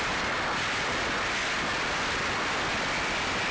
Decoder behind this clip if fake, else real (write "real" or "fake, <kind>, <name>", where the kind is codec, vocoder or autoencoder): real